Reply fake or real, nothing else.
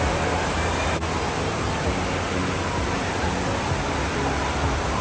real